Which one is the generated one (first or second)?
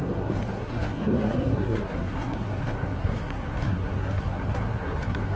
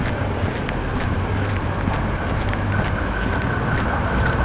first